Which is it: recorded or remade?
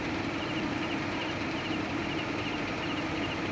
remade